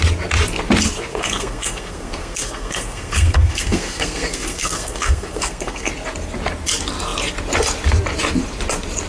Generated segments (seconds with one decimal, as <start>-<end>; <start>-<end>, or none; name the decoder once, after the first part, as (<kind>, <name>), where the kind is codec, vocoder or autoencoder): 1.1-5.9 (codec, SNAC)